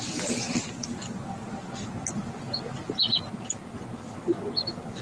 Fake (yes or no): no